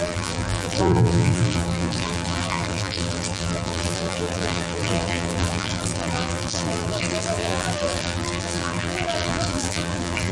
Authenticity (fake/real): fake